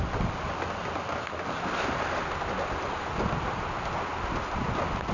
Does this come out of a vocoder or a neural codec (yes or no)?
no